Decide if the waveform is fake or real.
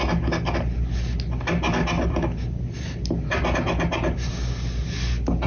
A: real